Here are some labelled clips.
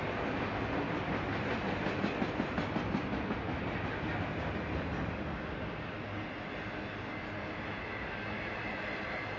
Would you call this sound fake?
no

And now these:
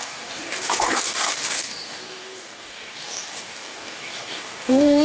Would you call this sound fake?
yes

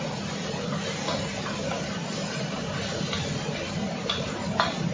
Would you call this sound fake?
no